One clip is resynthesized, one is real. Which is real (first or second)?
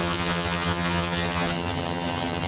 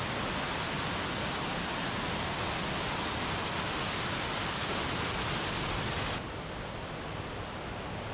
second